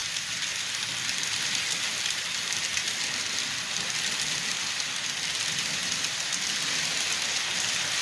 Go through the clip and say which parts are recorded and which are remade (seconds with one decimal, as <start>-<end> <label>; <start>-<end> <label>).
0.0-8.0 recorded